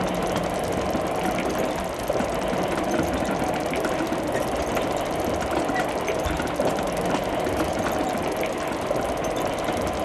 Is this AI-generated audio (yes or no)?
no